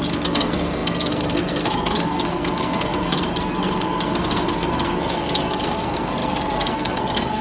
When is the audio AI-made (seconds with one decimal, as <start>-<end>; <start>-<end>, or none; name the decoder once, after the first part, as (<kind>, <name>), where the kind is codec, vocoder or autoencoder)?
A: 0.0-7.4 (codec, SNAC)